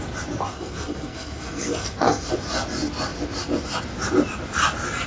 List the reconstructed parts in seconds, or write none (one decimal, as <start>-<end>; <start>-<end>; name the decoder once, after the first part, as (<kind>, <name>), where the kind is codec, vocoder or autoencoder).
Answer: 0.5-2.3 (codec, SNAC)